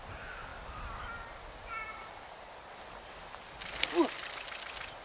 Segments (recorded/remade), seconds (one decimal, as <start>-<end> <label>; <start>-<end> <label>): 0.0-5.0 recorded